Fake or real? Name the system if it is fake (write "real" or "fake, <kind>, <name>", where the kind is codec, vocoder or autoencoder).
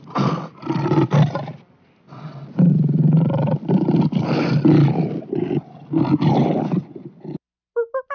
real